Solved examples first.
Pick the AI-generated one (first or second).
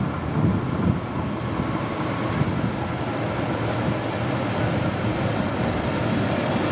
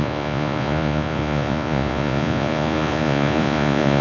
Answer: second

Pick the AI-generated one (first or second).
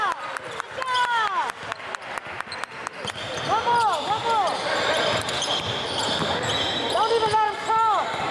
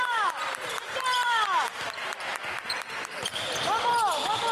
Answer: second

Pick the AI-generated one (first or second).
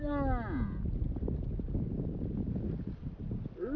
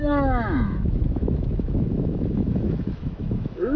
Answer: second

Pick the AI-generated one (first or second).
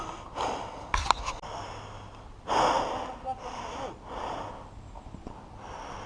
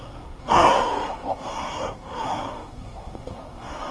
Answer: second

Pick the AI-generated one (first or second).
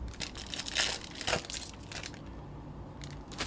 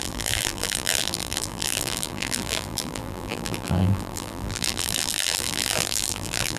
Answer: second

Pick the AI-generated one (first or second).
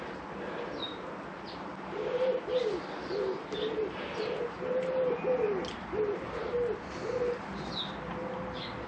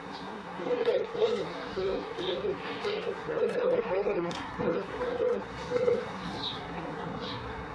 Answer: second